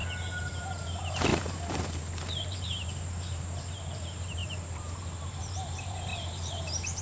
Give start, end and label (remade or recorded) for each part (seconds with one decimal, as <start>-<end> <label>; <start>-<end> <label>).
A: 0.0-0.6 recorded; 0.6-7.0 remade